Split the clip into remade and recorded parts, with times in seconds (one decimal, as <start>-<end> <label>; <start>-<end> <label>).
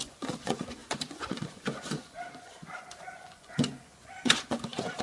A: 0.0-5.0 remade